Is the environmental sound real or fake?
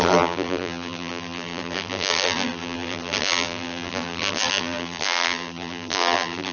fake